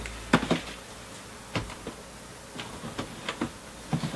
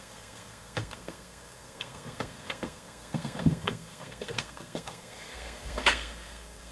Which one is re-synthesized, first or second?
second